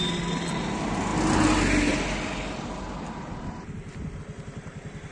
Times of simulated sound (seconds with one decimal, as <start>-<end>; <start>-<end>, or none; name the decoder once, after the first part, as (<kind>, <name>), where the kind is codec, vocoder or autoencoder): none